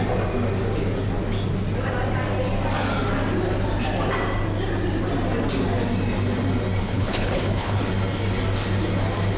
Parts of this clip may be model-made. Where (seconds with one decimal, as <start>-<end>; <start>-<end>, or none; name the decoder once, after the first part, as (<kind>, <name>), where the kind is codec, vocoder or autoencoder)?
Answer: 6.8-7.8 (codec, HILCodec)